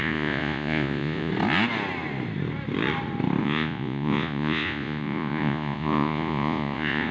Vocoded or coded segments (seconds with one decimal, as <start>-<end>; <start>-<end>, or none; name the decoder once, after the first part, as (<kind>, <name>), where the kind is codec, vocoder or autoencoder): 0.0-1.3 (vocoder, Vocos); 3.4-7.1